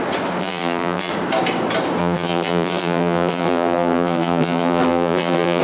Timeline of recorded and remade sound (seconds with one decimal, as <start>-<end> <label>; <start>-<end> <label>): 0.0-0.4 recorded; 0.4-1.1 remade; 1.1-2.0 recorded; 2.0-5.6 remade